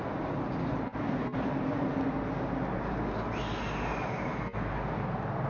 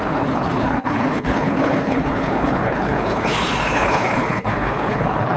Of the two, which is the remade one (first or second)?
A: second